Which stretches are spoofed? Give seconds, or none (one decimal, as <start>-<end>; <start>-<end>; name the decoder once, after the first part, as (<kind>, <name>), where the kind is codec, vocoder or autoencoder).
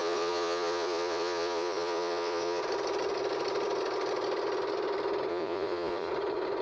0.0-2.6 (vocoder, Vocos); 5.3-6.1